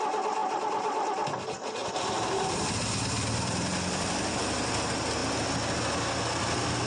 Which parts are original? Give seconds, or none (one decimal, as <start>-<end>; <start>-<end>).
0.0-0.4; 1.1-1.8; 4.3-6.9